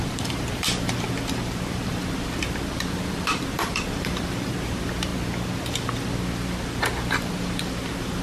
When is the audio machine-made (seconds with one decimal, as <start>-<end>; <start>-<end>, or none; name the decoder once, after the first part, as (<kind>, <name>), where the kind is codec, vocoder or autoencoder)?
0.0-5.1 (vocoder, BigVGAN v2); 5.7-8.2